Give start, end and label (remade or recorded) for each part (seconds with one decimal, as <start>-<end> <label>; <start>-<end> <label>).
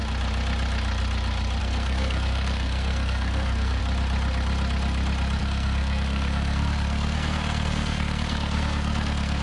0.0-1.6 recorded; 1.6-3.8 remade; 3.8-5.4 recorded; 5.4-9.4 remade